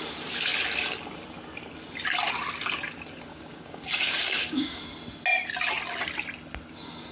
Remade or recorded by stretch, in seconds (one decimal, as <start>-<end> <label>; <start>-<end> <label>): 0.0-3.3 recorded; 3.3-4.8 remade; 4.8-7.1 recorded